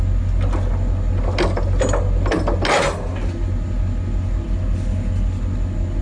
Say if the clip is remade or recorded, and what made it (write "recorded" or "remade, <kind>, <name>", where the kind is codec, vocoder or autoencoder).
recorded